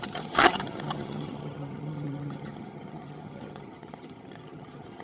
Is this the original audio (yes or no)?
no